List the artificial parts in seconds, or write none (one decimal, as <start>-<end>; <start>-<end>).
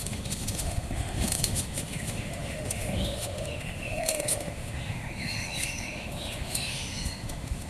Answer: 0.0-7.7